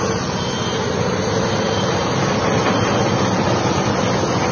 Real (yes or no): yes